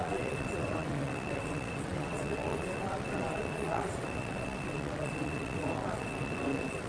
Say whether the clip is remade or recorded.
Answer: remade